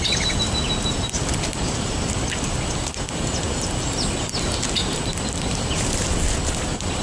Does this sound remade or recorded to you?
recorded